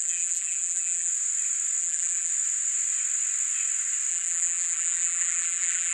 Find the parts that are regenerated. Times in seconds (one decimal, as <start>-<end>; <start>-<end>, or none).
0.0-1.1; 1.8-2.3; 4.1-5.9